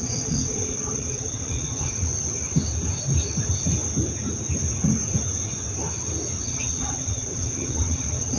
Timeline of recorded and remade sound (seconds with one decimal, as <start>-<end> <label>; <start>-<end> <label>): 0.0-2.1 remade; 2.1-6.4 recorded; 6.4-8.4 remade